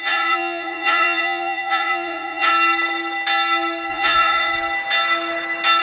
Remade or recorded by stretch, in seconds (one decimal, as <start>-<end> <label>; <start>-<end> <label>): 0.0-2.5 remade; 2.5-3.9 recorded; 3.9-4.5 remade; 4.5-5.8 recorded